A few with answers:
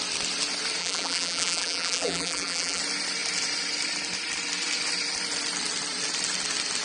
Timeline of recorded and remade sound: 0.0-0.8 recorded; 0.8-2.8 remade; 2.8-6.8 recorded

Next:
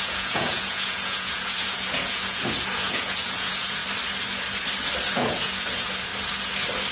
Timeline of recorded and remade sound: 0.0-3.8 remade; 3.8-5.1 recorded; 5.1-6.1 remade; 6.1-6.9 recorded

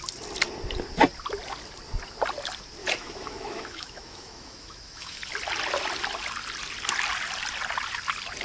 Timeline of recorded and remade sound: 0.0-2.8 recorded; 2.8-5.2 remade; 5.2-8.4 recorded

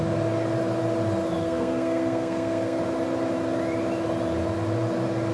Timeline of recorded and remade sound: 0.0-1.4 recorded; 1.4-2.8 remade; 2.8-5.3 recorded

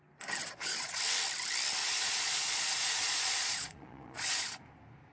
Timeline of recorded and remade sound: 0.0-0.4 recorded; 0.4-1.0 remade; 1.0-1.8 recorded; 1.8-4.6 remade; 4.6-5.1 recorded

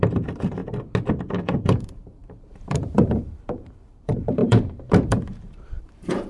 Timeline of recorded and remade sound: 0.0-0.6 remade; 0.6-1.4 recorded; 1.4-6.3 remade